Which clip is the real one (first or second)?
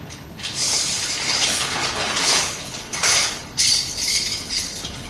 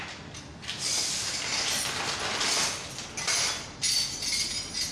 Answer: second